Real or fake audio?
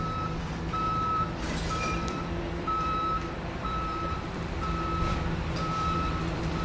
fake